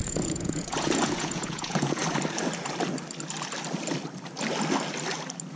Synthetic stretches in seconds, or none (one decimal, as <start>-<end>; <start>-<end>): 0.0-2.0